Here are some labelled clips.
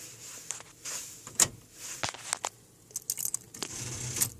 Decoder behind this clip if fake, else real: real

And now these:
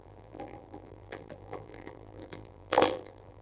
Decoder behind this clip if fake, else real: fake, vocoder, BigVGAN v2